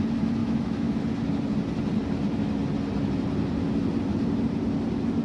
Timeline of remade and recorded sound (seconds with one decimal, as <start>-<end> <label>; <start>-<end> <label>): 0.0-0.4 recorded; 0.4-1.0 remade; 1.0-5.2 recorded